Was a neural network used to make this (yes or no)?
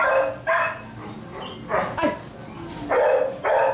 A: no